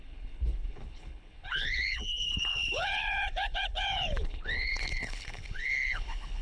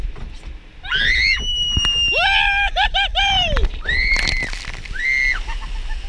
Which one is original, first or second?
second